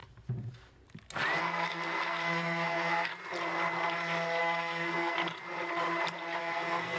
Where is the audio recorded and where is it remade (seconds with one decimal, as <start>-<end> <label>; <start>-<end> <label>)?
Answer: 0.0-1.4 recorded; 1.4-3.1 remade; 3.1-4.4 recorded; 4.4-5.2 remade; 5.2-6.4 recorded; 6.4-7.0 remade